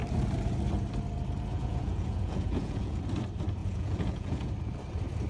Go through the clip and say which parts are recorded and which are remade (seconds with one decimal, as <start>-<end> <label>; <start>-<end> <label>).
0.0-1.5 recorded; 1.5-3.0 remade; 3.0-3.6 recorded; 3.6-4.5 remade; 4.5-5.3 recorded